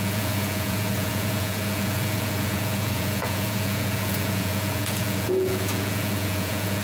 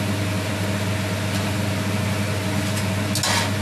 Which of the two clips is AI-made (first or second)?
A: first